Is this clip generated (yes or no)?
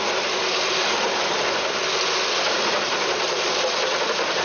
no